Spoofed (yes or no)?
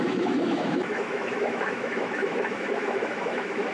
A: yes